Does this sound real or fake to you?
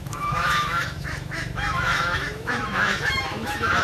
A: fake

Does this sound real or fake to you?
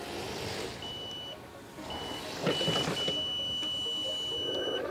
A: real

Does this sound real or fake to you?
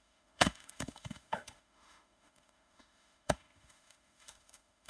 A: fake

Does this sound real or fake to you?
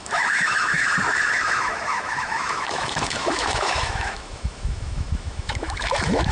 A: fake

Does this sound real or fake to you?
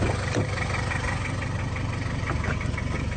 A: real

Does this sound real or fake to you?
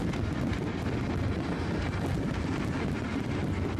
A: real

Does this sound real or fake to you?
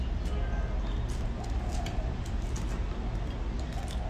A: real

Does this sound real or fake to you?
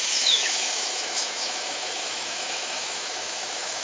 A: fake